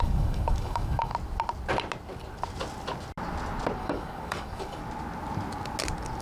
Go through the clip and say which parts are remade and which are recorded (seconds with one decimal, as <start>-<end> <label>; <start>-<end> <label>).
0.0-1.1 remade; 1.1-3.8 recorded; 3.8-4.8 remade; 4.8-6.2 recorded